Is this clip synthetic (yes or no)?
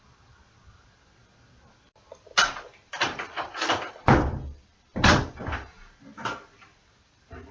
yes